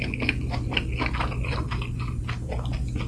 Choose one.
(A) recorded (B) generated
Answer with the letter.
A